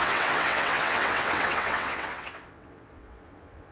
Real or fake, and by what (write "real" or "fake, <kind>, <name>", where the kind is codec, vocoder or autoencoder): fake, vocoder, WaveNeXt